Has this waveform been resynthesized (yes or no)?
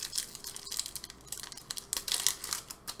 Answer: no